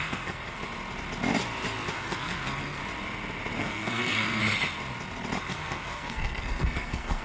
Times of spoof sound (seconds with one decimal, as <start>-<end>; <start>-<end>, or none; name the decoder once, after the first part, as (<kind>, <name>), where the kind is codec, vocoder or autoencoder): 0.0-0.6 (codec, SNAC); 1.9-2.8; 3.6-4.4; 5.4-7.2